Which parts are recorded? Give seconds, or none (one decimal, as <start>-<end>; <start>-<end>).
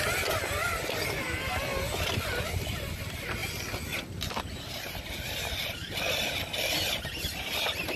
0.0-8.0